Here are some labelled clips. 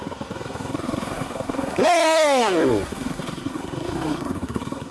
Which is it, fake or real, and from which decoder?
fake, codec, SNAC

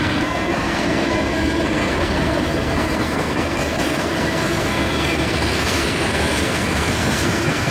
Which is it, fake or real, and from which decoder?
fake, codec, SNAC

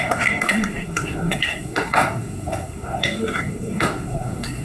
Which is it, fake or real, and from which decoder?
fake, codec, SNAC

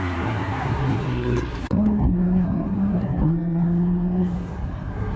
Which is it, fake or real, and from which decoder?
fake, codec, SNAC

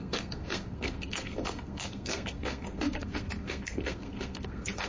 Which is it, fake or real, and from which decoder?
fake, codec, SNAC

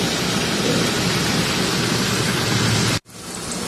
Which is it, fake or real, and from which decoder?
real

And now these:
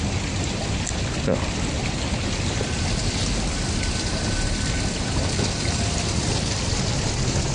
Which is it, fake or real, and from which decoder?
real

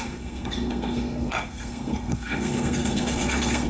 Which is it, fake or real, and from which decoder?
fake, codec, SNAC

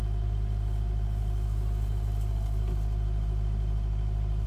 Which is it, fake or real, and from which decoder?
real